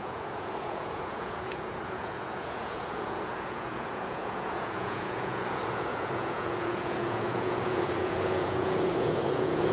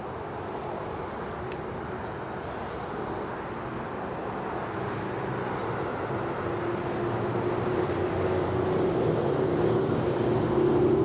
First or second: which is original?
second